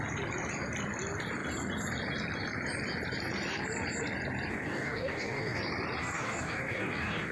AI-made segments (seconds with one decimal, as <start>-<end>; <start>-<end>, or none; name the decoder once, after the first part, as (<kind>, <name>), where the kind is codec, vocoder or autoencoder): 4.5-5.6 (codec, DAC); 6.0-7.3